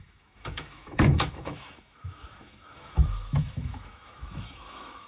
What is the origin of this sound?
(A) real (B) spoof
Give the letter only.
B